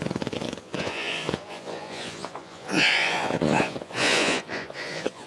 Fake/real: fake